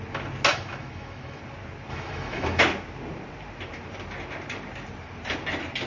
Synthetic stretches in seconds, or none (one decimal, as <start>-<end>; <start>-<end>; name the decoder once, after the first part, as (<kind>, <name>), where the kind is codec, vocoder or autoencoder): 0.5-1.4 (autoencoder, DAC-VAE); 1.9-2.6